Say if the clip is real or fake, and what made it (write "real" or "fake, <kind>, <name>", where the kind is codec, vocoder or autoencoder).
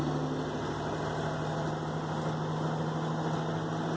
real